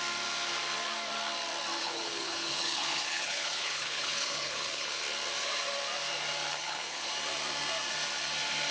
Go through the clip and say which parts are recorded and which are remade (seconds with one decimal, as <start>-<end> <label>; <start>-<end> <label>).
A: 0.0-1.8 recorded; 1.8-5.0 remade; 5.0-6.5 recorded; 6.5-7.1 remade; 7.1-8.7 recorded